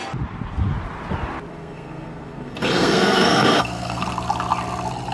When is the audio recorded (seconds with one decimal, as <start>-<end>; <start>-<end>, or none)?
0.0-1.5; 4.0-5.1